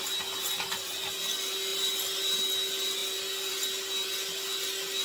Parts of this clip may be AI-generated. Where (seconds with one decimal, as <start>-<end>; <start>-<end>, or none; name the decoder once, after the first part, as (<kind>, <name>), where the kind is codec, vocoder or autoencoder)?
none